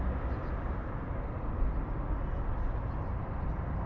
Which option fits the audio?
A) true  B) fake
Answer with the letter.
A